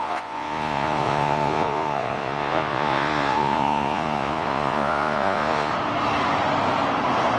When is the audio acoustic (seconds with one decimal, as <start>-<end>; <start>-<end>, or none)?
5.7-7.4